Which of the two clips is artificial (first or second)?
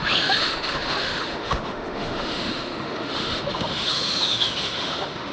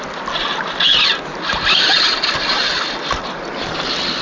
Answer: first